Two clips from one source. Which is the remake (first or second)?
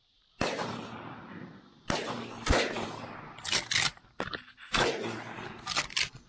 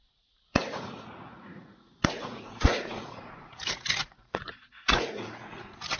second